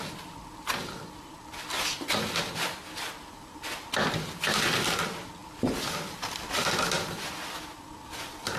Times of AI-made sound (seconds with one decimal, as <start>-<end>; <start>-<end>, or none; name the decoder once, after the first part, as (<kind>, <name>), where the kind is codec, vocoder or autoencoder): 5.4-6.8 (vocoder, BigVGAN v2)